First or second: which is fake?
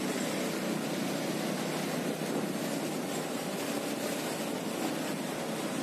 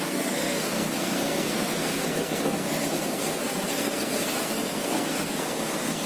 second